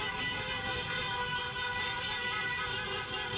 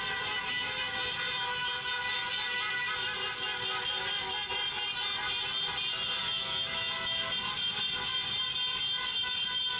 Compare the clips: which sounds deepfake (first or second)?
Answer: first